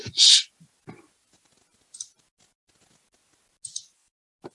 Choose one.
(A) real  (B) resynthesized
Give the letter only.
A